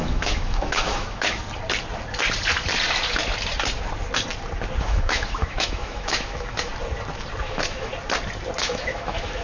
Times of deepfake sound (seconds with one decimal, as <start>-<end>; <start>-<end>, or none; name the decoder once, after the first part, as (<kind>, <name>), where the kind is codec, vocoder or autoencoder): 0.0-1.4 (autoencoder, DAC-VAE); 4.8-6.7; 7.4-7.9; 8.6-9.4